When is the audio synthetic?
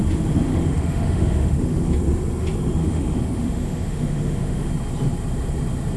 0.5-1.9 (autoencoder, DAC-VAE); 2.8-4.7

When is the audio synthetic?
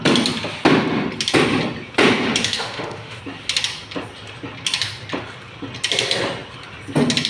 2.4-3.2 (autoencoder, DAC-VAE)